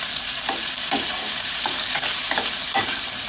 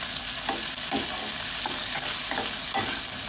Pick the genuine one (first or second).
second